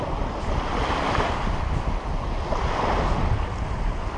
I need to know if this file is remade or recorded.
recorded